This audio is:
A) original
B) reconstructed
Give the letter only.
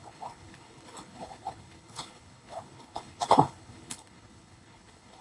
B